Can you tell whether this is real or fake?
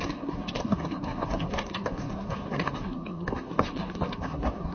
fake